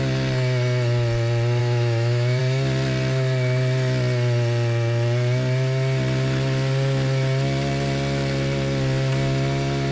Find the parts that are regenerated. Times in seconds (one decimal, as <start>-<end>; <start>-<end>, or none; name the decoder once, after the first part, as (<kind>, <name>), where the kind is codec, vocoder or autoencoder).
1.6-2.4 (autoencoder, DAC-VAE)